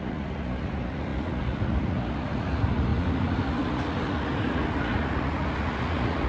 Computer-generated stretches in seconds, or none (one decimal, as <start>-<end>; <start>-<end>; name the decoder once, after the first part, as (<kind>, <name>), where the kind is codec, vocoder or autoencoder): 0.0-6.3 (vocoder, Vocos)